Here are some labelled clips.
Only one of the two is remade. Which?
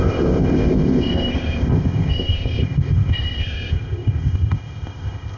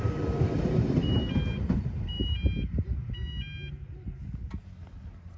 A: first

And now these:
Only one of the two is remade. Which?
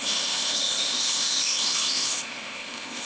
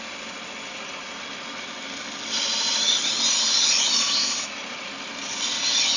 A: first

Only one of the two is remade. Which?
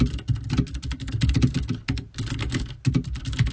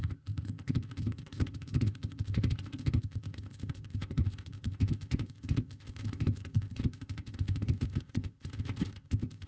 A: second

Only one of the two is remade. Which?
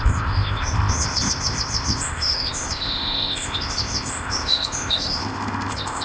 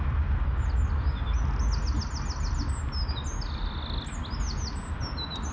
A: first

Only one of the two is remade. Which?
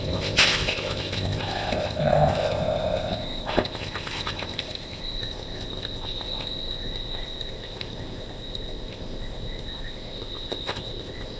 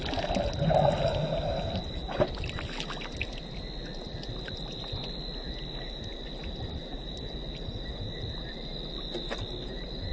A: first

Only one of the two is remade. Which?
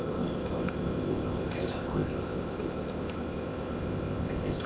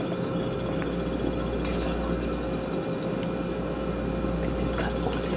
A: first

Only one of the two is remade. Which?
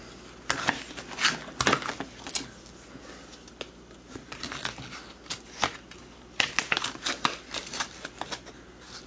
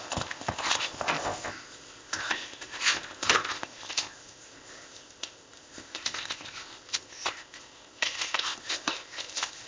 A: second